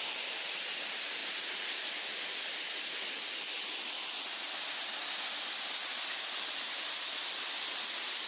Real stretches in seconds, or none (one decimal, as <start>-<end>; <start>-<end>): 0.0-8.3